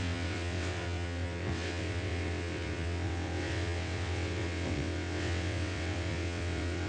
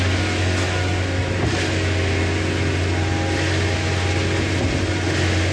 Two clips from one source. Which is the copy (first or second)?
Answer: first